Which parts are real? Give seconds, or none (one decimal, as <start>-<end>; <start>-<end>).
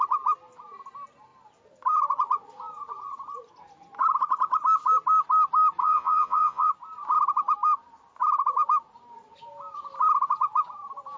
0.0-5.8; 6.7-11.2